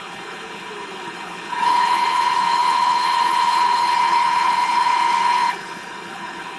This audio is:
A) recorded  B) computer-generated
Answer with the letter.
B